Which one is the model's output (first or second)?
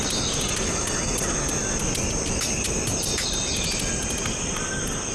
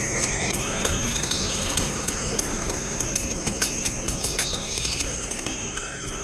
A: second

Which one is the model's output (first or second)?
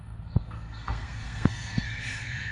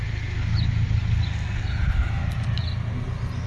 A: first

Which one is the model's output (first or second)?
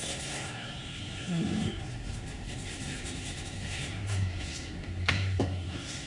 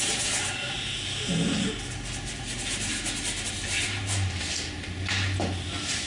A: first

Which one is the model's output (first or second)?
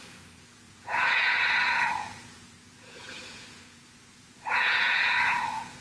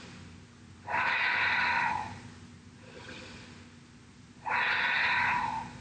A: first